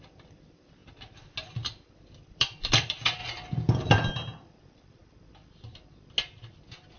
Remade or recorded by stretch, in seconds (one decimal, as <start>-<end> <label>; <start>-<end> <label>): 0.0-0.8 remade; 0.8-2.2 recorded; 2.2-3.2 remade; 3.2-3.9 recorded; 3.9-5.0 remade; 5.0-7.0 recorded